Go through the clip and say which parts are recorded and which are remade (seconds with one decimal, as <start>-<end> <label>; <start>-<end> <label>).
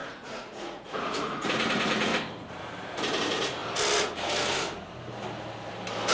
0.0-2.1 remade; 2.1-3.2 recorded; 3.2-3.6 remade; 3.6-6.1 recorded